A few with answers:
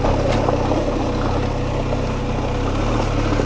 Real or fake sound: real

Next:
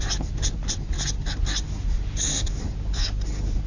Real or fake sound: real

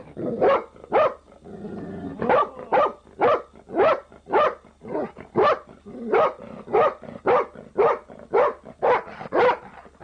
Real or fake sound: real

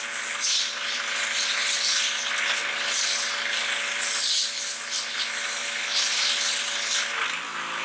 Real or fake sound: real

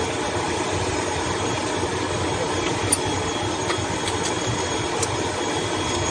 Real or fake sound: fake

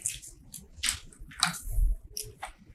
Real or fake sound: real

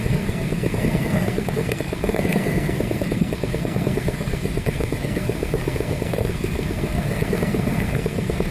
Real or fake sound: fake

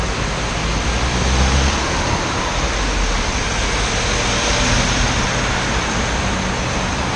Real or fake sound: real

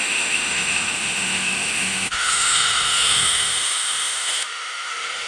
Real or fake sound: fake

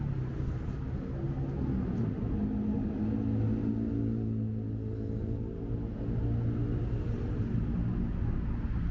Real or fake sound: real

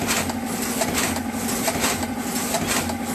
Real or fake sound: real